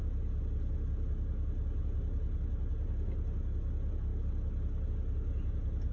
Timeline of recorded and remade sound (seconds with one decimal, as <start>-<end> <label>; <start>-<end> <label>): 0.0-5.9 recorded